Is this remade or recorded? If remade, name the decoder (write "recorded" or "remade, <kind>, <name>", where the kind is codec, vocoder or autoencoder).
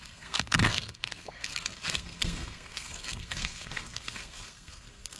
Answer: remade, codec, SNAC